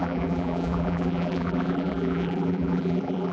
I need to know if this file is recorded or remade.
remade